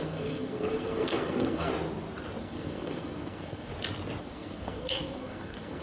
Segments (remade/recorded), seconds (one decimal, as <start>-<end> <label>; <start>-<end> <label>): 0.0-1.7 remade; 1.7-2.4 recorded; 2.4-3.7 remade; 3.7-4.2 recorded; 4.2-5.8 remade